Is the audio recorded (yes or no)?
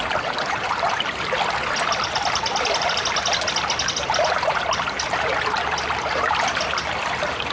yes